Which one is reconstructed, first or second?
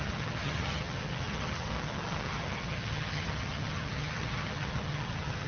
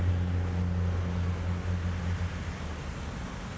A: first